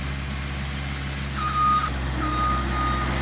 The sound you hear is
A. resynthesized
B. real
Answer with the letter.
B